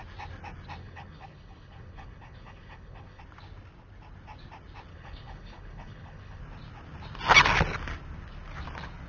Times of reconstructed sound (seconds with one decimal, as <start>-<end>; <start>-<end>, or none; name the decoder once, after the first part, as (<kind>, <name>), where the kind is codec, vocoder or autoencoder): 0.8-3.2 (codec, HILCodec); 4.9-6.4